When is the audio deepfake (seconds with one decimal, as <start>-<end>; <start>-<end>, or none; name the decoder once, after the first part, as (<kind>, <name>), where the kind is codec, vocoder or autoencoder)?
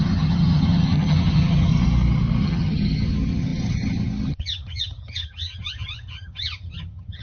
0.0-1.7 (vocoder, HiFi-GAN); 2.4-7.2